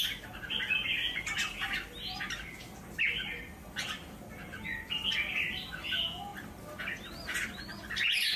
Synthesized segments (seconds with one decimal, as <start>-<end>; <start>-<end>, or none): none